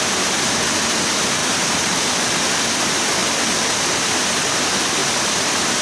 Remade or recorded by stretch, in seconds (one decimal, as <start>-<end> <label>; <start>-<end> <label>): 0.0-5.8 recorded